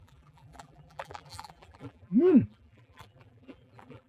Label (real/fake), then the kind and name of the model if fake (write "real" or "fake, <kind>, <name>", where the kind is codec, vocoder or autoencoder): fake, vocoder, BigVGAN v2